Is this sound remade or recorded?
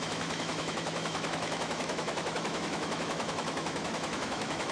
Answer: remade